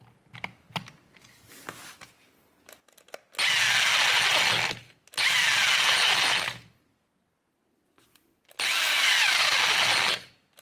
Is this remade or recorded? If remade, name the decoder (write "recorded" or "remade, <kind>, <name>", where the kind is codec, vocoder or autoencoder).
recorded